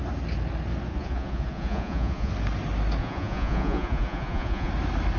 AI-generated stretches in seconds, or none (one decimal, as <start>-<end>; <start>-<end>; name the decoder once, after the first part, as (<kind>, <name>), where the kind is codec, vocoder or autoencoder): 0.9-2.3 (vocoder, Vocos); 3.0-4.7